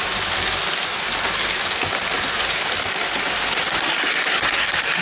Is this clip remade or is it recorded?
recorded